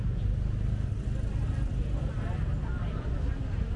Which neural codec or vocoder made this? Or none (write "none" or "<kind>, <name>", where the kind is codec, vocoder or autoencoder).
none